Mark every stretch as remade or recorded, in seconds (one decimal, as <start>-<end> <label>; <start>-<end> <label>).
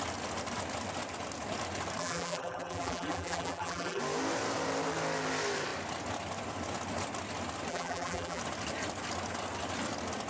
0.0-2.0 recorded; 2.0-4.0 remade; 4.0-7.7 recorded; 7.7-8.4 remade; 8.4-10.3 recorded